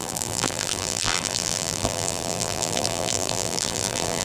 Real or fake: fake